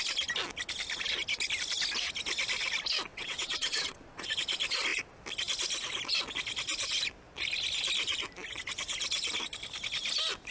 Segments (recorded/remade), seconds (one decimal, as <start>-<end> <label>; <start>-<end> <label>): 0.0-3.1 recorded; 3.1-4.3 remade; 4.3-10.5 recorded